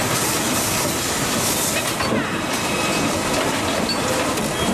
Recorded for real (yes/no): yes